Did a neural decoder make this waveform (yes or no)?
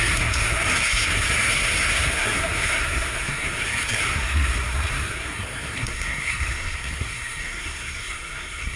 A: yes